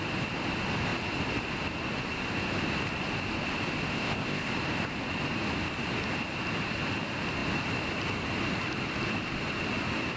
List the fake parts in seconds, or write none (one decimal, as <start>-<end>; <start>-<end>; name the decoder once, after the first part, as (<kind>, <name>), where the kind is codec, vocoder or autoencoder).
3.9-4.5 (codec, ZipCodec)